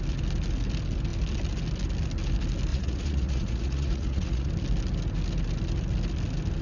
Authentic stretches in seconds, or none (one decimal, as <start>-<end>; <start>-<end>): 0.0-2.7; 4.5-6.6